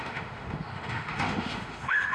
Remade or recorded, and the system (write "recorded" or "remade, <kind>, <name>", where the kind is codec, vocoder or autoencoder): remade, autoencoder, DAC-VAE